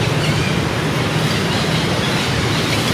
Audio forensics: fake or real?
real